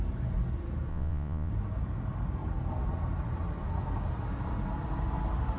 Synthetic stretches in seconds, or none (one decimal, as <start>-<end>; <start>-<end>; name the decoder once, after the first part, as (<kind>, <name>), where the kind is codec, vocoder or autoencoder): 0.9-1.5 (vocoder, Vocos)